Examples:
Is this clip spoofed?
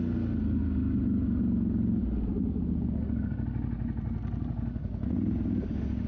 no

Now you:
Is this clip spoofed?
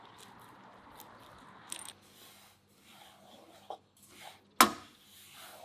no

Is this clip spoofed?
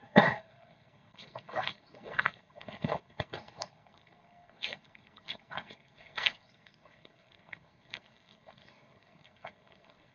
yes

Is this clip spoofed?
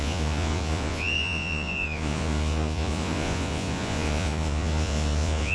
yes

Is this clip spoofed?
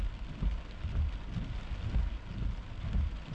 no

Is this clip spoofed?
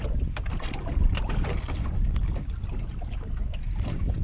no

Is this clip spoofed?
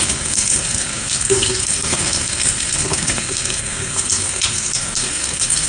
yes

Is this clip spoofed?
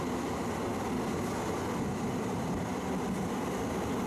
no